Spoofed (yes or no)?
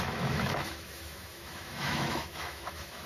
yes